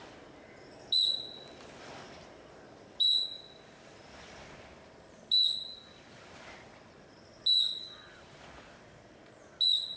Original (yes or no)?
yes